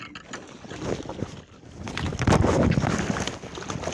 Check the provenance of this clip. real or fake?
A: real